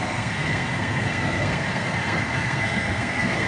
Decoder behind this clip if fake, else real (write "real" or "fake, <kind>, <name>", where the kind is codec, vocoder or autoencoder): fake, codec, SNAC